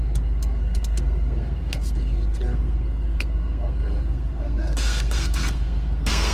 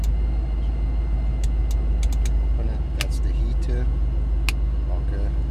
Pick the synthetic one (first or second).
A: first